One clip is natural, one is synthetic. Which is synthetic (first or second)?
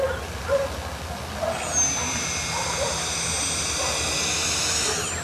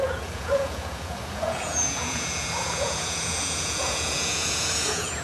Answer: second